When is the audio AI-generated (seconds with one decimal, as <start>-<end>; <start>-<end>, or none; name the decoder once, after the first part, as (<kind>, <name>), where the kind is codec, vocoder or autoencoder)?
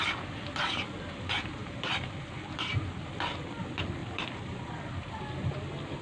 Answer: 1.6-2.7 (vocoder, BigVGAN v2); 4.0-4.6